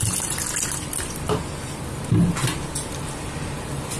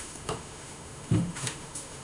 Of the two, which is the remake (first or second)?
second